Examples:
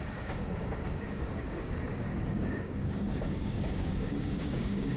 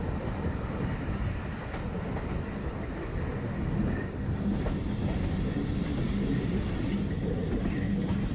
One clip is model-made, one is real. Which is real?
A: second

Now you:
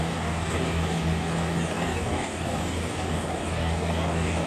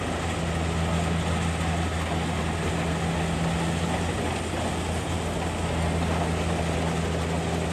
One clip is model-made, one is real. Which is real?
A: second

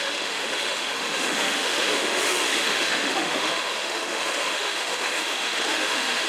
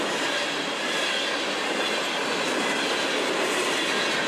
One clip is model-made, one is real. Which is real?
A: second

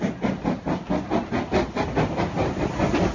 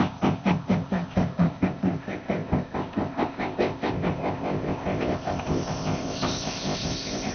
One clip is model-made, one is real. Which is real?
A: first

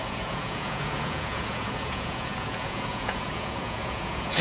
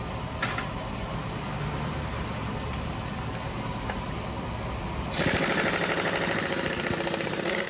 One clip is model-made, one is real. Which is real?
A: second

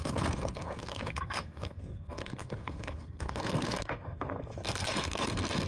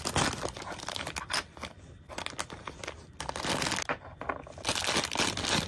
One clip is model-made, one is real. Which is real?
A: second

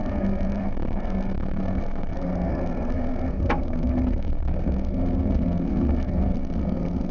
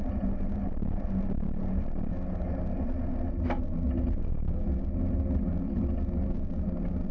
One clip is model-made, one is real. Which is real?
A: second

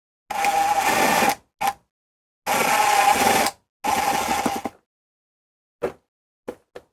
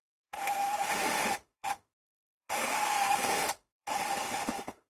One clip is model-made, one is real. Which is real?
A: first